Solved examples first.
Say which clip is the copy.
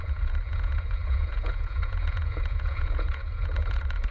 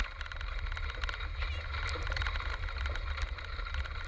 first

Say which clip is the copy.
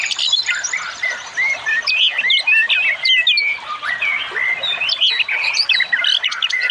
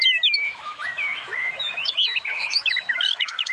second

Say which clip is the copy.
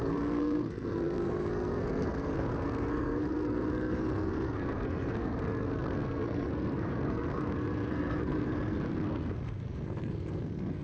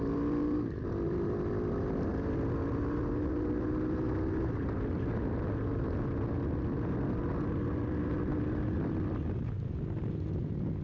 first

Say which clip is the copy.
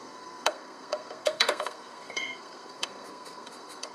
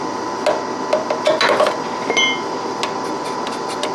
first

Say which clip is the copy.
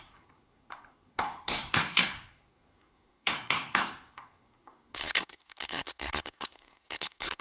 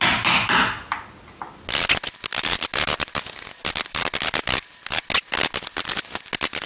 first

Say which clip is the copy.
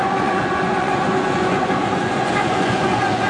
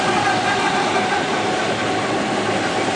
first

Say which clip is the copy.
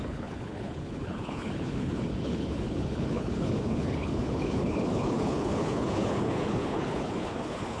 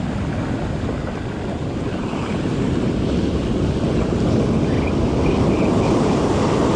first